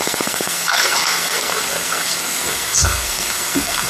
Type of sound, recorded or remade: remade